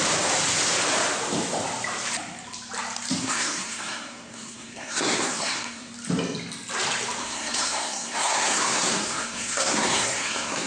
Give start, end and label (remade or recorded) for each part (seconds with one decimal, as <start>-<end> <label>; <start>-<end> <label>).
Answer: 0.0-3.2 recorded; 3.2-5.9 remade; 5.9-7.2 recorded; 7.2-10.7 remade